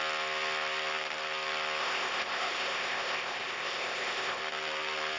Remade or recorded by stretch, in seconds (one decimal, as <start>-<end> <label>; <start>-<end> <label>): 0.0-1.8 recorded; 1.8-4.4 remade; 4.4-5.2 recorded